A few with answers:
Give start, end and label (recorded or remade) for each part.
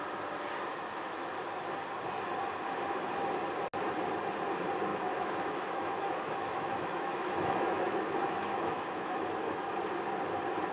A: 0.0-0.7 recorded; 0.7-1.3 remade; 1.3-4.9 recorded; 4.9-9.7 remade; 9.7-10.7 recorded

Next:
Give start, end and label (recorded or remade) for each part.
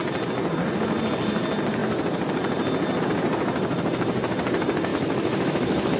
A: 0.0-4.9 recorded; 4.9-6.0 remade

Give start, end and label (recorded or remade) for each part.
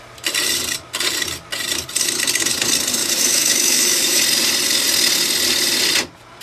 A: 0.0-3.0 recorded; 3.0-4.2 remade; 4.2-6.4 recorded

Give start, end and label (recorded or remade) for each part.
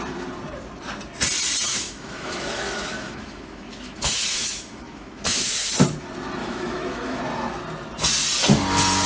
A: 0.0-1.7 recorded; 1.7-5.7 remade; 5.7-6.4 recorded; 6.4-7.2 remade; 7.2-9.1 recorded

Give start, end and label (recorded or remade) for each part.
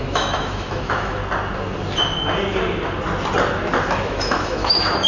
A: 0.0-1.2 remade; 1.2-4.0 recorded; 4.0-5.1 remade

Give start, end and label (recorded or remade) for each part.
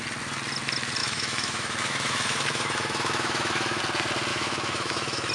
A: 0.0-1.0 recorded; 1.0-3.8 remade; 3.8-4.3 recorded; 4.3-5.3 remade